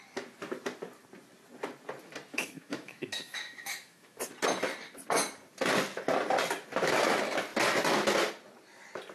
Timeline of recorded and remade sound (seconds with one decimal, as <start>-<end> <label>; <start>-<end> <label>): 0.0-2.3 recorded; 2.3-4.2 remade; 4.2-9.1 recorded